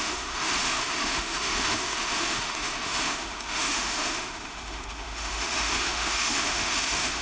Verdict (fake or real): fake